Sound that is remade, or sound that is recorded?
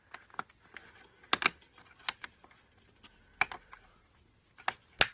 recorded